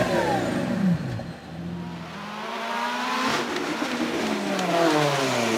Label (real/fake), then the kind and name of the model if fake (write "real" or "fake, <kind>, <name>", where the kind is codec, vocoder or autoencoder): real